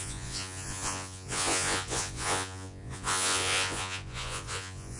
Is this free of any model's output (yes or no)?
no